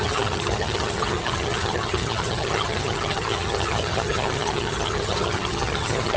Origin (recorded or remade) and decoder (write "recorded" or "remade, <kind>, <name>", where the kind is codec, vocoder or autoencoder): remade, vocoder, HiFi-GAN